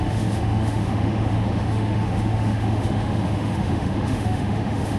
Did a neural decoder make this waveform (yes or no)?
yes